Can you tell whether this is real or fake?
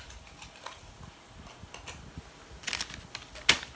real